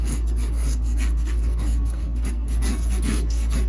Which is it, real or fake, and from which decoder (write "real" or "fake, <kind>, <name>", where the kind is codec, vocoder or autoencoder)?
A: fake, codec, SNAC